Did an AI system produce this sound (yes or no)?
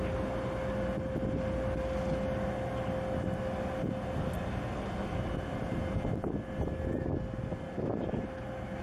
no